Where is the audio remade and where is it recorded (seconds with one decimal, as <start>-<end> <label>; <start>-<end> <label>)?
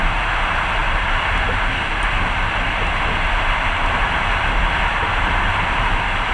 0.0-6.3 recorded